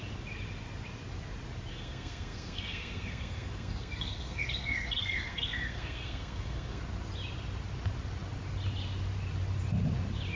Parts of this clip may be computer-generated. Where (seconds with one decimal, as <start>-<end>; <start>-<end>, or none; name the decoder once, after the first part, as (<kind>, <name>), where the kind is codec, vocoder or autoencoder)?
1.7-6.8 (codec, SNAC)

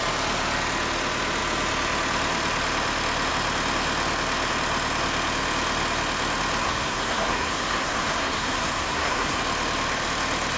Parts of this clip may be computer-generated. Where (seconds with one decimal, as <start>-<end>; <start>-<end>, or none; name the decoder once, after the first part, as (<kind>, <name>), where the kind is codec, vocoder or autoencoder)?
6.6-9.4 (codec, SNAC)

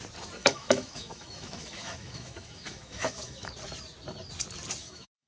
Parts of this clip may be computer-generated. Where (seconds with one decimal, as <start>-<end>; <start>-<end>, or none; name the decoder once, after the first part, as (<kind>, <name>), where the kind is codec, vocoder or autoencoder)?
0.4-3.5 (autoencoder, DAC-VAE); 4.8-5.3

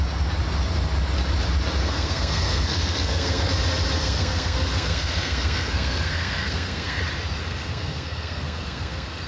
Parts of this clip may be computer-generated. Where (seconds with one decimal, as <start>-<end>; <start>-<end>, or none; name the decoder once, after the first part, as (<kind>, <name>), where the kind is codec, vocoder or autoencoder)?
1.8-3.5 (codec, SNAC); 4.0-7.0; 7.4-9.3